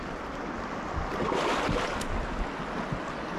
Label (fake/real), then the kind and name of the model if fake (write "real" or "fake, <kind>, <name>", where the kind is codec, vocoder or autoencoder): real